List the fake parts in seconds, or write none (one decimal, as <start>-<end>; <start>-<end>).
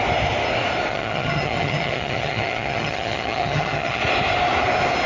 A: 0.9-4.0